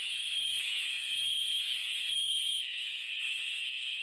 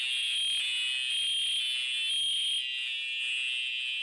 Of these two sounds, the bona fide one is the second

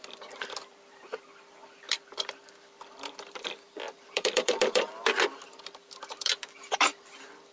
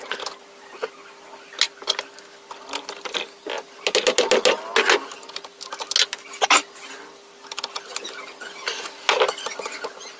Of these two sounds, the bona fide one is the second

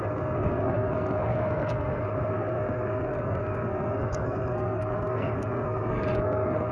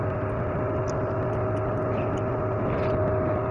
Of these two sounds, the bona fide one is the second